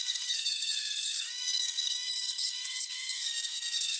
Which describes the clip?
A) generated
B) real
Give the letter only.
A